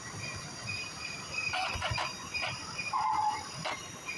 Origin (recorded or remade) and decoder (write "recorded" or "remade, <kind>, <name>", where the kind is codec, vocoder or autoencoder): remade, vocoder, BigVGAN v2